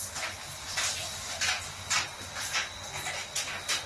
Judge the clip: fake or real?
real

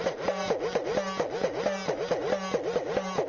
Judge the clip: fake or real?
real